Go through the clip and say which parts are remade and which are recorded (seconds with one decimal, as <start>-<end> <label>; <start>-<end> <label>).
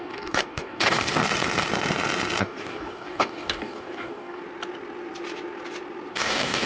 0.0-1.1 remade; 1.1-2.4 recorded; 2.4-4.4 remade; 4.4-6.1 recorded; 6.1-6.7 remade